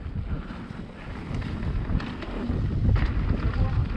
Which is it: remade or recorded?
recorded